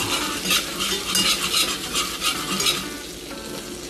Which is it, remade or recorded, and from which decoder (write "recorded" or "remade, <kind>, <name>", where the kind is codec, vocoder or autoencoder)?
recorded